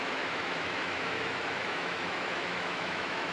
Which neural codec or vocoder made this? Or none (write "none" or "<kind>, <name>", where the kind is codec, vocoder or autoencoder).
autoencoder, DAC-VAE